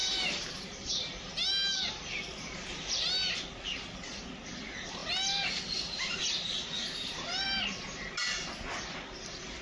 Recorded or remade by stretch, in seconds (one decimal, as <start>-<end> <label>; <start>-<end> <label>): 0.0-0.9 remade; 0.9-9.6 recorded